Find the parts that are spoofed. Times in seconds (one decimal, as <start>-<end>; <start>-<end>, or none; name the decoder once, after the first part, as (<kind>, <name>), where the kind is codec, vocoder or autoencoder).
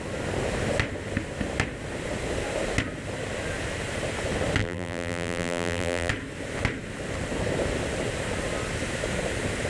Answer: 4.6-6.1 (vocoder, BigVGAN v2)